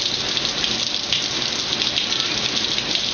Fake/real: real